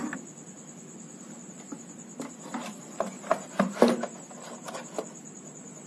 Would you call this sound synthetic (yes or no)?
no